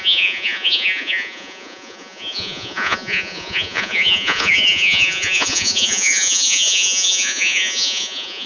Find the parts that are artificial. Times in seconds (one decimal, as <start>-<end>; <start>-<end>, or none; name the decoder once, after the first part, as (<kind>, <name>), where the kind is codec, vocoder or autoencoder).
0.0-8.5 (vocoder, Vocos)